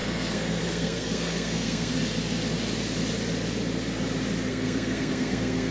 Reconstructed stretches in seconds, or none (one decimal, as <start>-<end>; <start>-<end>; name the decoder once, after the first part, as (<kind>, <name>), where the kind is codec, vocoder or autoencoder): 0.0-1.9 (codec, SNAC); 4.5-5.7